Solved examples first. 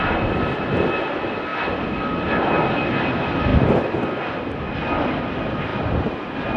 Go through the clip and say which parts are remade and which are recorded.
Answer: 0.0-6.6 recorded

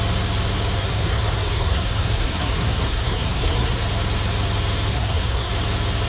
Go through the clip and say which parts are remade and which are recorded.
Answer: 0.0-0.8 recorded; 0.8-3.8 remade; 3.8-4.9 recorded; 4.9-5.5 remade; 5.5-6.1 recorded

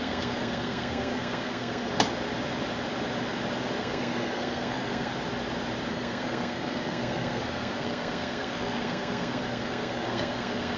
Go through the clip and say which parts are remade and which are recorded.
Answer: 0.0-1.9 remade; 1.9-3.8 recorded; 3.8-5.1 remade; 5.1-5.9 recorded; 5.9-10.8 remade

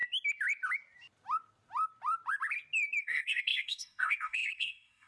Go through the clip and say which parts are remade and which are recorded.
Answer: 0.0-3.0 recorded; 3.0-5.1 remade

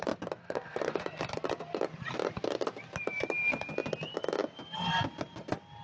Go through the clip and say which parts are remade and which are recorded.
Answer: 0.0-0.4 recorded; 0.4-1.0 remade; 1.0-5.8 recorded

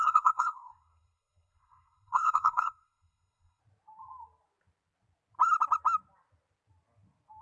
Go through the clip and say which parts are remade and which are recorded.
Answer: 0.0-3.6 remade; 3.6-7.4 recorded

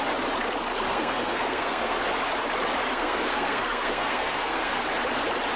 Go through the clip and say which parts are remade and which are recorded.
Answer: 0.0-0.9 recorded; 0.9-2.0 remade; 2.0-2.9 recorded; 2.9-4.8 remade; 4.8-5.6 recorded

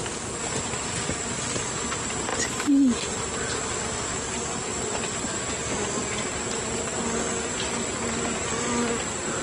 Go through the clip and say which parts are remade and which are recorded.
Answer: 0.0-9.4 recorded